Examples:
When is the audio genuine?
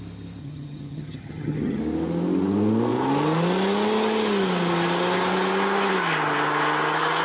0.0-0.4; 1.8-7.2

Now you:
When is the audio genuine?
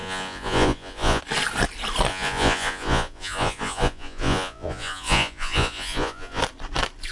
1.2-2.1; 6.4-7.1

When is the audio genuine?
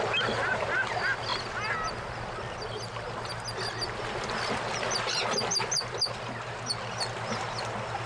0.0-8.1